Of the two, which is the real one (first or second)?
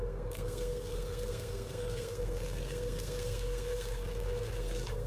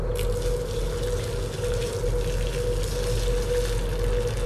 second